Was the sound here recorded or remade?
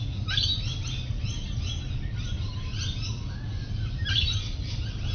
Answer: recorded